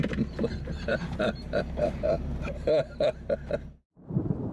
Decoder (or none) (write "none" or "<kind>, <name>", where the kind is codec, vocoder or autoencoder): vocoder, BigVGAN v2